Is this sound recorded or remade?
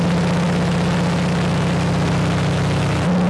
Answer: recorded